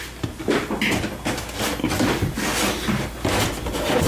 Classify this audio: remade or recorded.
recorded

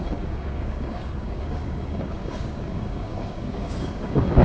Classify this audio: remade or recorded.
remade